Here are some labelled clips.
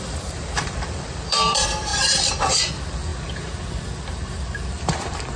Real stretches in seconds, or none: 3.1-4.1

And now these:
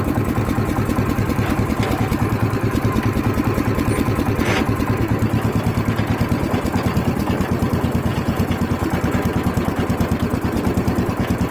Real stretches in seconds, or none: 0.0-8.1; 8.7-11.5

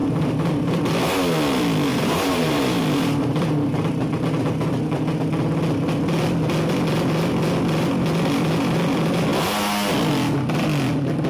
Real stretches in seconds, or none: 0.8-1.9; 4.3-11.3

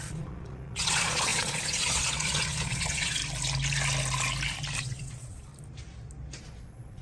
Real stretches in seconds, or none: 3.2-4.8; 5.5-6.4

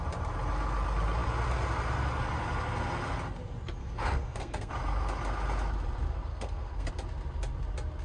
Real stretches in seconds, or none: 0.0-3.8; 4.7-6.3; 6.9-8.0

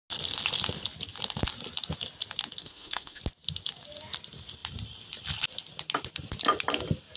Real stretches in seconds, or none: 0.0-2.6; 3.2-7.2

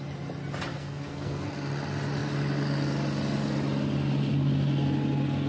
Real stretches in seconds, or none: 0.0-0.7; 1.5-5.5